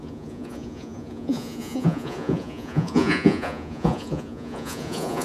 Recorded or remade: remade